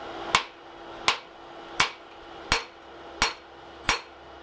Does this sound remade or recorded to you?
recorded